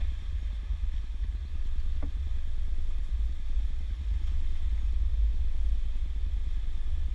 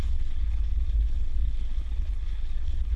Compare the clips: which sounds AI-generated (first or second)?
second